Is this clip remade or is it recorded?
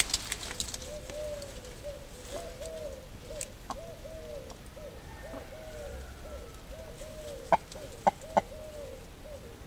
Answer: recorded